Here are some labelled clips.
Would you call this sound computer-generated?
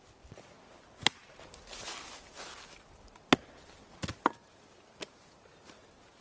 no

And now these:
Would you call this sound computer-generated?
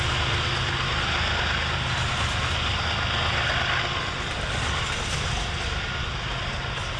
no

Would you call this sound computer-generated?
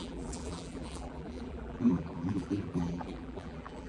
yes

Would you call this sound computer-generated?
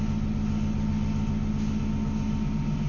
no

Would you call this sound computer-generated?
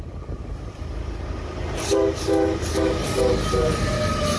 no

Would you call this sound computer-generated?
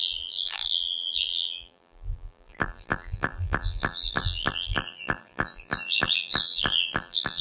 yes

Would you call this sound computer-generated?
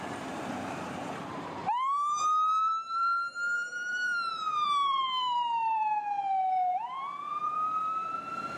yes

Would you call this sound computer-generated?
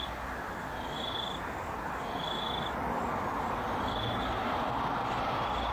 no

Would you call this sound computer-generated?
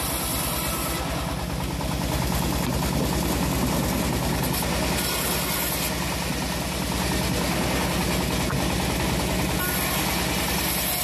no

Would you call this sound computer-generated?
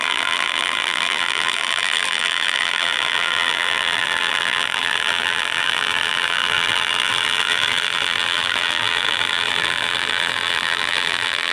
yes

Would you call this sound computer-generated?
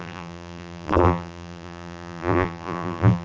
yes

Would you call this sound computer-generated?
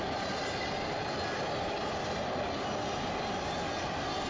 no